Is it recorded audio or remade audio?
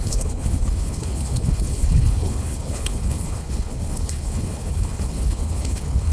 remade